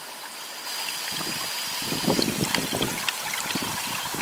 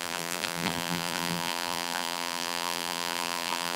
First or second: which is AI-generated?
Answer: second